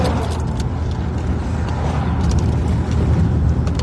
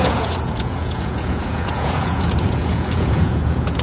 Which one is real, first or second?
first